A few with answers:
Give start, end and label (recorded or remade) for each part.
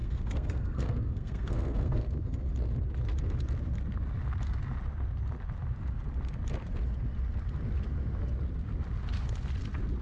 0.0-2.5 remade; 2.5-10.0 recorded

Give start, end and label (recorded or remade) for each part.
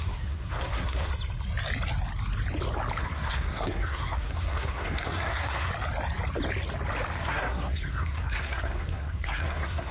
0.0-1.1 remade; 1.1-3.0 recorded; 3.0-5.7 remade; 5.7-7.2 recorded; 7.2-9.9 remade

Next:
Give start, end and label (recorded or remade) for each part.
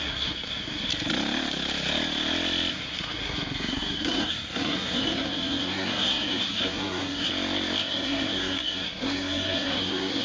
0.0-0.9 remade; 0.9-2.7 recorded; 2.7-7.3 remade; 7.3-7.8 recorded; 7.8-10.2 remade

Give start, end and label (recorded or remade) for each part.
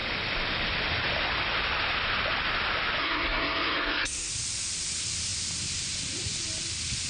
0.0-3.0 recorded; 3.0-4.3 remade; 4.3-7.1 recorded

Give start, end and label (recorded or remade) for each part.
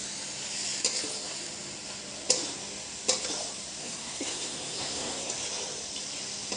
0.0-3.8 recorded; 3.8-5.3 remade; 5.3-6.6 recorded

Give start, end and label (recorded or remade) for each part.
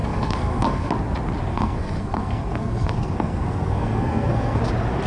0.0-0.9 remade; 0.9-1.5 recorded; 1.5-4.6 remade; 4.6-5.1 recorded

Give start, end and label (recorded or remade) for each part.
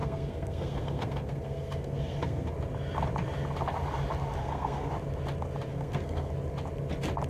0.0-2.5 remade; 2.5-4.4 recorded; 4.4-4.9 remade; 4.9-5.7 recorded; 5.7-6.3 remade; 6.3-7.3 recorded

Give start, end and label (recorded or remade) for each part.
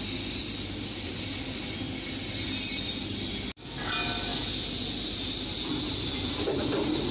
0.0-7.1 recorded